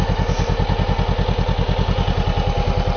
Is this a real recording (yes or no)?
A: yes